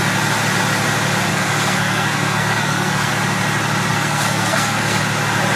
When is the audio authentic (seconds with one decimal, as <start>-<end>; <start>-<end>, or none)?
0.0-1.3; 3.1-3.9; 5.0-5.6